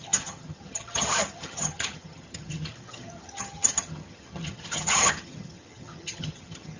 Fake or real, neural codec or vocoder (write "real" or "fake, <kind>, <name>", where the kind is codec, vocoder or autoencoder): fake, vocoder, HiFi-GAN